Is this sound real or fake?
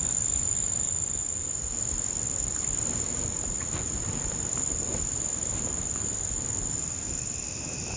real